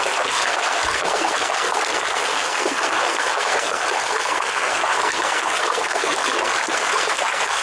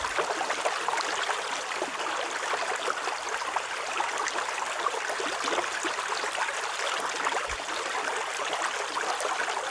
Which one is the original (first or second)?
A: second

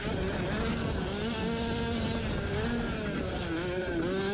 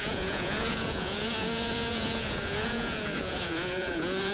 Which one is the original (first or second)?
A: first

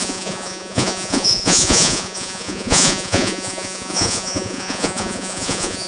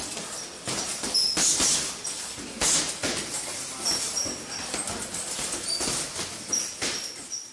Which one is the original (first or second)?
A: second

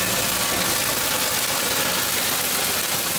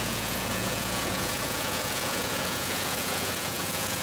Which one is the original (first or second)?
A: first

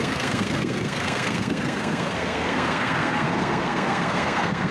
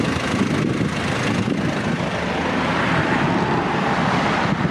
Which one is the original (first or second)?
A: second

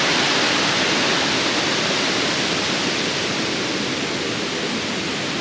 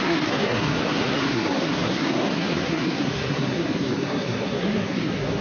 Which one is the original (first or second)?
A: first